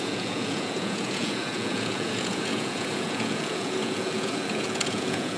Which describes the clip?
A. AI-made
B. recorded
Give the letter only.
A